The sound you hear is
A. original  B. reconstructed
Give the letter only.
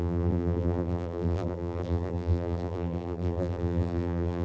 B